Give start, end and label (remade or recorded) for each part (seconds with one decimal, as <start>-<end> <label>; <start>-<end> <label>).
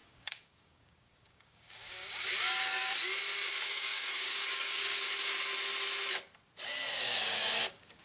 0.0-3.0 remade; 3.0-3.5 recorded; 3.5-5.5 remade; 5.5-7.0 recorded; 7.0-8.0 remade